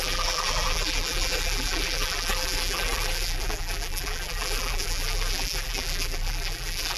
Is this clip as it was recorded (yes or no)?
no